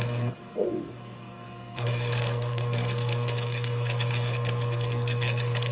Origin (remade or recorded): remade